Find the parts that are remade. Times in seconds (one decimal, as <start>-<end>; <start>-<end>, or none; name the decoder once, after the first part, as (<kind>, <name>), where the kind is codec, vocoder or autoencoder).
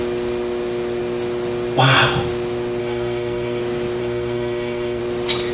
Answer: 2.8-3.6 (codec, SNAC); 4.0-5.0